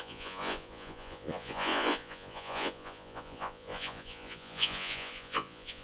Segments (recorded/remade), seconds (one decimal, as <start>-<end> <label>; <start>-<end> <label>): 0.0-5.8 remade